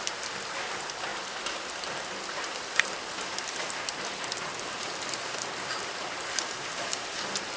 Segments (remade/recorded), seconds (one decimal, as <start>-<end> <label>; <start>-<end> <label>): 0.0-7.6 recorded